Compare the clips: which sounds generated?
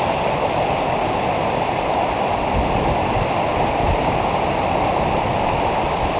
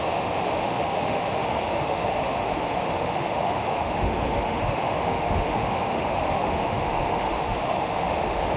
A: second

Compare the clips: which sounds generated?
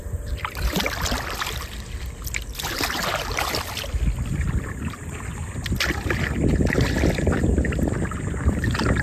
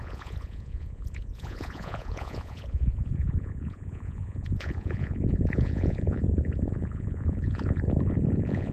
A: second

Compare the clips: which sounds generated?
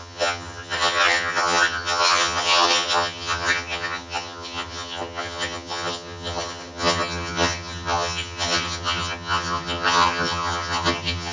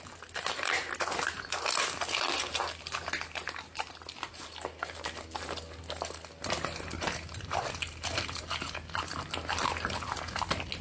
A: first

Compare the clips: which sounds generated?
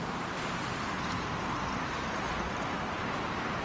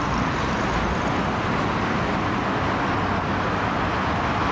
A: first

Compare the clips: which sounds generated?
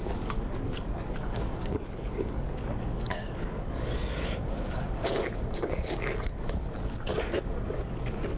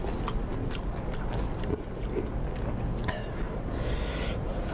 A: first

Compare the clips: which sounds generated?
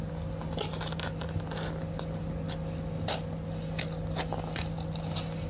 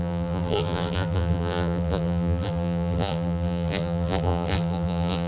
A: second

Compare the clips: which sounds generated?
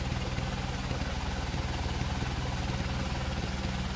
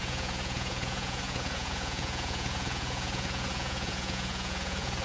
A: second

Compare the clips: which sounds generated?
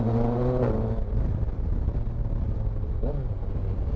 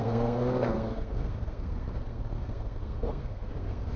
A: second